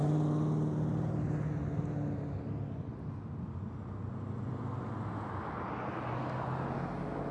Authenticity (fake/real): real